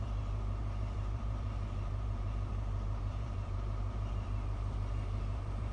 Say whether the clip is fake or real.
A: fake